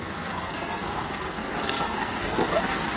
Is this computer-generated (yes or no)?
yes